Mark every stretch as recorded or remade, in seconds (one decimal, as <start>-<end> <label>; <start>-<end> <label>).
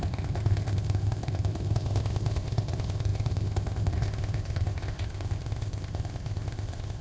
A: 0.0-7.0 remade